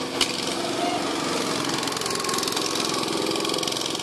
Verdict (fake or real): real